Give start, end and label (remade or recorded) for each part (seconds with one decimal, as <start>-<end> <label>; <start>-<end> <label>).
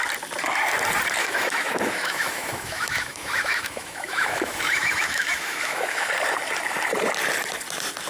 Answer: 0.0-1.2 recorded; 1.2-6.1 remade; 6.1-8.1 recorded